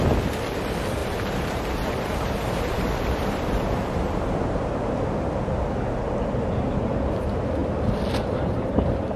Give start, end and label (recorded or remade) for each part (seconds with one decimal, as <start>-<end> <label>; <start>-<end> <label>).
0.0-1.0 recorded; 1.0-4.7 remade; 4.7-9.2 recorded